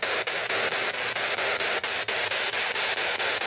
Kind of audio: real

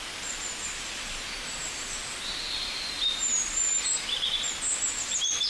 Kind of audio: real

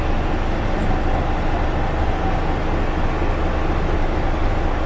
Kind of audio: real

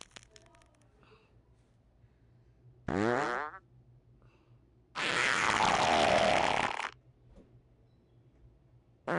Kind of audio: real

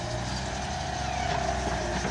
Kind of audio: real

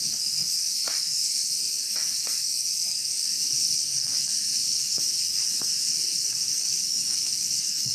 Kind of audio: fake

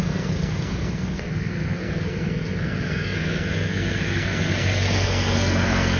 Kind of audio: fake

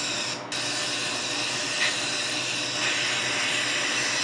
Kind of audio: real